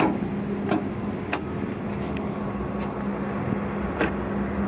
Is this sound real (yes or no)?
yes